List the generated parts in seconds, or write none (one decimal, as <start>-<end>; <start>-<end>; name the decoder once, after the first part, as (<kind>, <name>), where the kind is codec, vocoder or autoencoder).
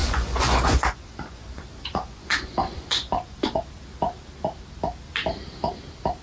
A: 0.0-3.6 (vocoder, Vocos)